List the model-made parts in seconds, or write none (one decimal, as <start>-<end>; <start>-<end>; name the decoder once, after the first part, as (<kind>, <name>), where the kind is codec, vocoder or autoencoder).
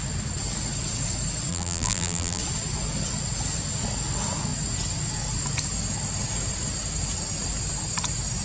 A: 1.5-2.4 (vocoder, BigVGAN v2)